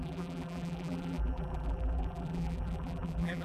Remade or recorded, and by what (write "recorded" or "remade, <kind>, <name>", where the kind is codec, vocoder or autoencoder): remade, vocoder, BigVGAN v2